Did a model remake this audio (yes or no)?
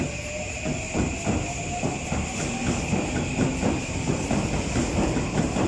no